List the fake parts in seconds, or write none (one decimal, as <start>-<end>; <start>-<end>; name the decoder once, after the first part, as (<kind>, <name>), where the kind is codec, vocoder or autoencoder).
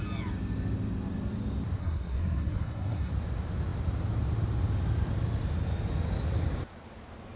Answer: 1.8-3.1 (codec, SNAC)